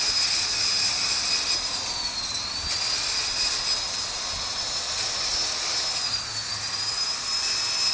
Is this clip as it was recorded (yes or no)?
yes